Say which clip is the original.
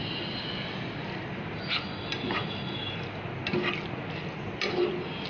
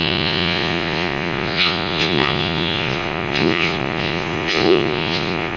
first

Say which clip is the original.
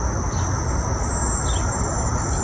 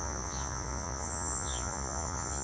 first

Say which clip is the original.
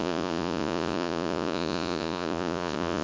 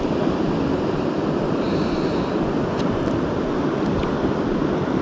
second